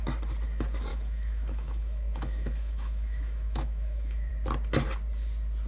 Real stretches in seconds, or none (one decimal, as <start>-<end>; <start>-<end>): 0.0-0.9; 4.3-5.7